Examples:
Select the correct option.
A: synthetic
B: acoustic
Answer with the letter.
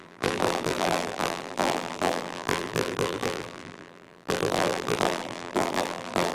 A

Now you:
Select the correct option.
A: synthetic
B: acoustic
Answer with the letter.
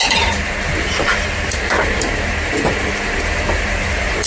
A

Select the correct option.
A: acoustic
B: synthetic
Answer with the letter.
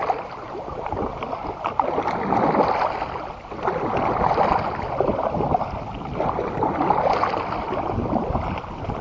A